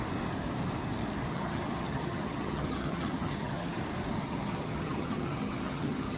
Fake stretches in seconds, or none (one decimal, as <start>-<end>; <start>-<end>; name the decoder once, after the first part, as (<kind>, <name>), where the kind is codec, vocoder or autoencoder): 1.3-3.8 (vocoder, HiFi-GAN); 4.2-6.2